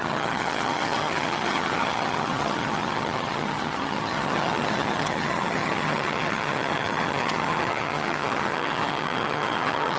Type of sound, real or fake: fake